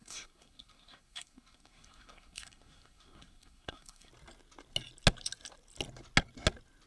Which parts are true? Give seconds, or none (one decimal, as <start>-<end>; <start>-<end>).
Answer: 4.1-6.9